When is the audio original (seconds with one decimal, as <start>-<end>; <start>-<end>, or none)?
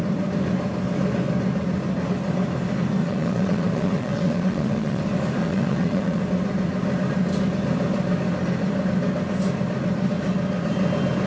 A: 0.0-3.0; 5.0-5.4; 6.2-11.3